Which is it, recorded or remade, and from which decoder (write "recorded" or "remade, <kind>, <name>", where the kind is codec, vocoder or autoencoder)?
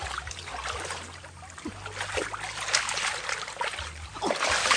recorded